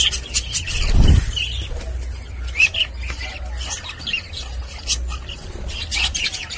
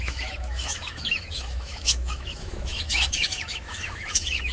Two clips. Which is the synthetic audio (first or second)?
second